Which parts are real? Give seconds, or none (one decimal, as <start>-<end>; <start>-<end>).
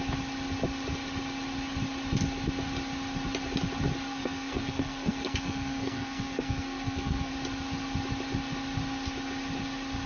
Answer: 0.0-4.1; 7.3-10.1